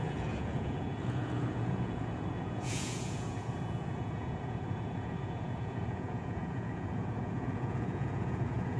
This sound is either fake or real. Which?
fake